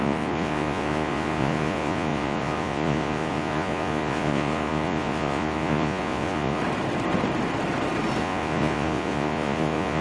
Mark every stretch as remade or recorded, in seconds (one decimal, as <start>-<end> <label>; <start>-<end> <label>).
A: 0.0-6.6 remade; 6.6-8.2 recorded; 8.2-10.0 remade